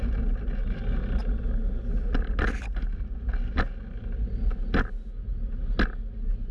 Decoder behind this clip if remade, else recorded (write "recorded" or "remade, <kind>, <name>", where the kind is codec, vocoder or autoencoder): recorded